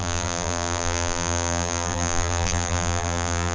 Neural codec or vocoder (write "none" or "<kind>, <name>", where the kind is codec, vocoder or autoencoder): vocoder, BigVGAN v2